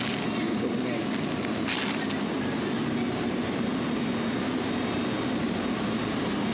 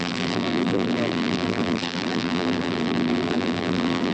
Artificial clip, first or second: second